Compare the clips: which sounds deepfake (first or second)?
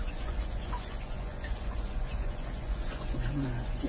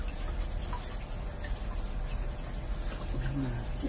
first